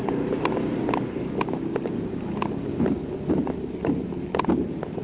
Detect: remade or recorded recorded